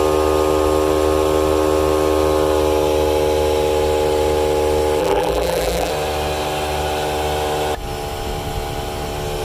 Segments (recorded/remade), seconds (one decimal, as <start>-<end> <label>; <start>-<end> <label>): 0.0-5.0 recorded; 5.0-5.9 remade; 5.9-9.4 recorded